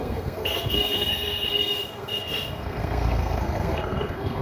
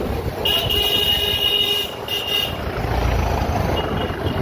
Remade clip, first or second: first